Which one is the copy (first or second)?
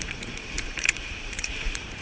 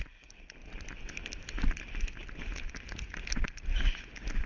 first